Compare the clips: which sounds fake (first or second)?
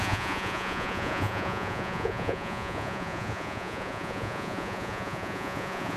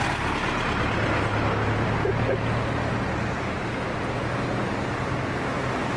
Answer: first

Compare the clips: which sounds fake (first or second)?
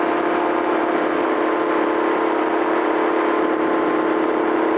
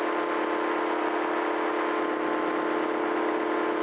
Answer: first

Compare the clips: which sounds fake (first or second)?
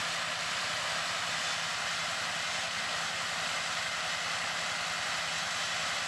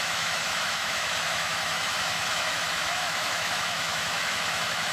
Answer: second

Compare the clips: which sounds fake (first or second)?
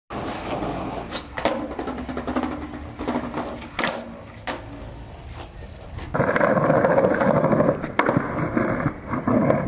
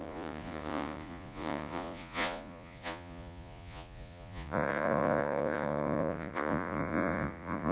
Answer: second